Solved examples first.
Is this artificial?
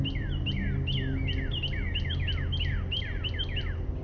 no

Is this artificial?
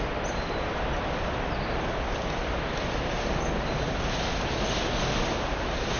no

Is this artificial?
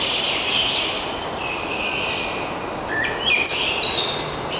no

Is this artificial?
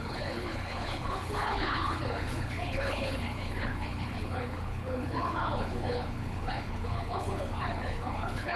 yes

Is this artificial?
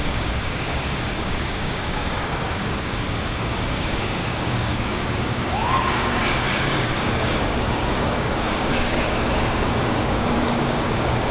yes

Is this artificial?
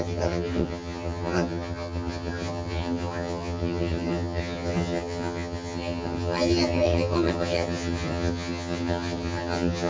yes